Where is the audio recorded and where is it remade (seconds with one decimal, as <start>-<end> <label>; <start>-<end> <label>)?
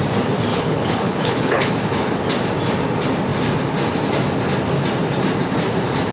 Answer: 0.0-0.5 recorded; 0.5-1.7 remade; 1.7-6.1 recorded